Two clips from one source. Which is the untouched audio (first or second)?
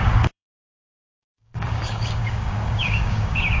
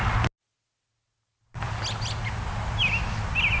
second